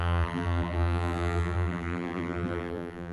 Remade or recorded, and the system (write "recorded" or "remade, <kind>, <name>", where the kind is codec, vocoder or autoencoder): remade, vocoder, BigVGAN v2